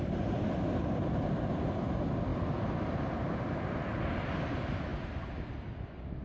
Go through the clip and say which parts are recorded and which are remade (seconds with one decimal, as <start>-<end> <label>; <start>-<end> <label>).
0.0-6.2 recorded